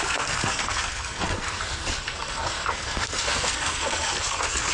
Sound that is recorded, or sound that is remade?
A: remade